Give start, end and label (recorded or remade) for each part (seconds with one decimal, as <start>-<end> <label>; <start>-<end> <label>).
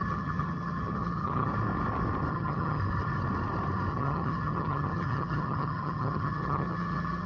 0.0-1.5 remade; 1.5-2.3 recorded; 2.3-2.8 remade; 2.8-3.9 recorded; 3.9-7.3 remade